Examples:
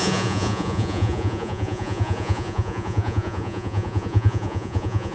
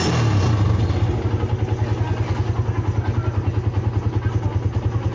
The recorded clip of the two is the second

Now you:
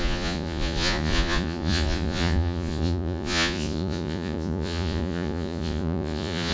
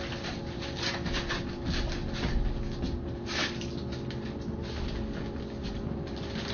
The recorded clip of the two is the second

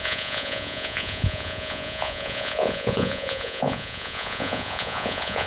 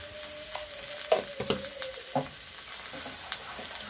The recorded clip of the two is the second